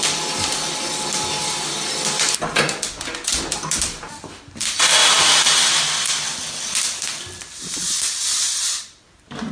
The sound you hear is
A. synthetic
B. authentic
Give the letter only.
B